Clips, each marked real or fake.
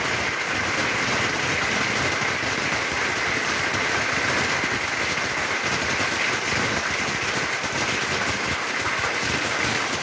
real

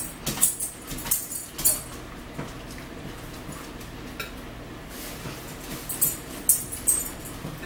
real